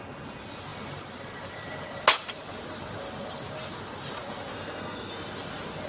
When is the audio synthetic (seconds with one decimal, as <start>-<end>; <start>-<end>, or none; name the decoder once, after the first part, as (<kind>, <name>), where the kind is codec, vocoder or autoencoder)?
4.5-5.1 (codec, SNAC)